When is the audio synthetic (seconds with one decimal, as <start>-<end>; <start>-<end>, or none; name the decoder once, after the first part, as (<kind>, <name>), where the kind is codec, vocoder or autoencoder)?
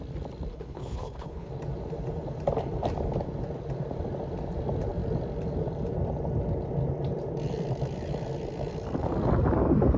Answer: 0.5-1.5 (codec, HILCodec)